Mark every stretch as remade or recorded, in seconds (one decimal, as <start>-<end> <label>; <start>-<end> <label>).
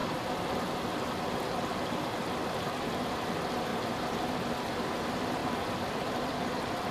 0.0-0.5 remade; 0.5-5.4 recorded; 5.4-6.9 remade